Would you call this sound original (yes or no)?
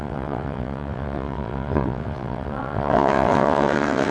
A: no